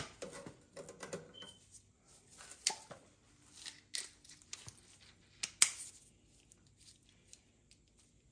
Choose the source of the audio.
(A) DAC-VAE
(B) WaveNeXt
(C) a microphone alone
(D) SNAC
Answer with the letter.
C